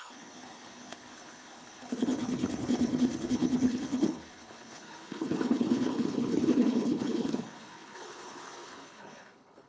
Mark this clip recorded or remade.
remade